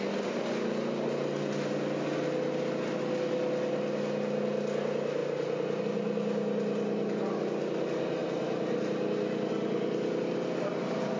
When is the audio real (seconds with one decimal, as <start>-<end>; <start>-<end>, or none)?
0.0-11.2

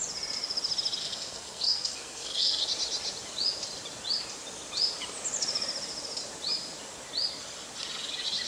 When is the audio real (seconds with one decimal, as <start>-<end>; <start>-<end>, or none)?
0.0-1.0; 2.6-8.5

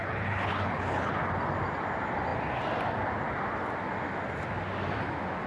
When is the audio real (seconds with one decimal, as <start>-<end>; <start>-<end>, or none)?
1.1-5.5

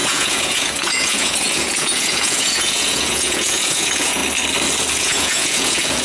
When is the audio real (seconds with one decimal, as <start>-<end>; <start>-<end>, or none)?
4.2-5.0